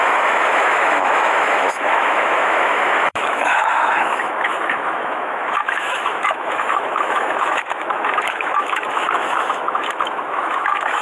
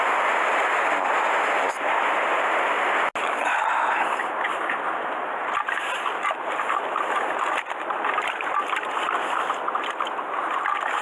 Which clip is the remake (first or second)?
first